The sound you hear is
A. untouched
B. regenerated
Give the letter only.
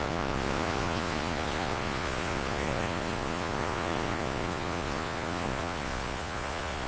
B